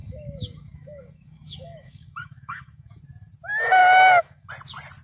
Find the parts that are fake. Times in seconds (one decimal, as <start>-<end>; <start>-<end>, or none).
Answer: 0.0-3.0; 3.8-4.5